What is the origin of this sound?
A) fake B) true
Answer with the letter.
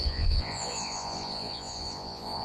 A